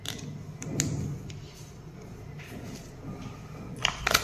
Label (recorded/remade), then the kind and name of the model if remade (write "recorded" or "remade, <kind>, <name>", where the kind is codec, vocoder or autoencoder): recorded